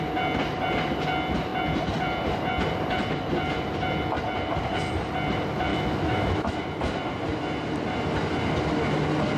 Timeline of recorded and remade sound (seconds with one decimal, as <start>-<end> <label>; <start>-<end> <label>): 0.0-5.7 recorded; 5.7-6.6 remade; 6.6-9.4 recorded